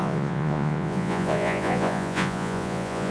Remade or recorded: remade